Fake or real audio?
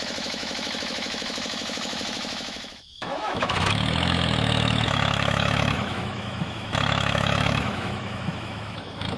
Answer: fake